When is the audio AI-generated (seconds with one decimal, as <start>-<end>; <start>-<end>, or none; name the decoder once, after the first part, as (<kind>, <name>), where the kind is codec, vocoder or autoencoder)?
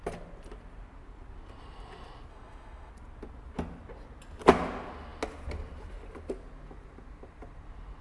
2.3-2.9 (autoencoder, DAC-VAE)